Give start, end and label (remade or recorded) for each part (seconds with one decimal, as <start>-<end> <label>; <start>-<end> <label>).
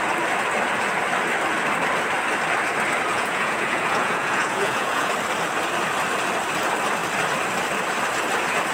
0.0-3.1 recorded; 3.1-5.1 remade; 5.1-8.7 recorded